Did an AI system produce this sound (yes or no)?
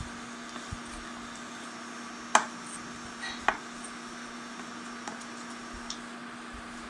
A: no